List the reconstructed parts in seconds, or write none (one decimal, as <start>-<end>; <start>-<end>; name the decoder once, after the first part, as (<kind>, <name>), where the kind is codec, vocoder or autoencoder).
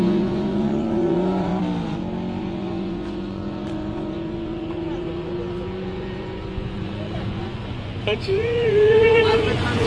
0.0-1.5 (vocoder, Vocos); 2.4-9.9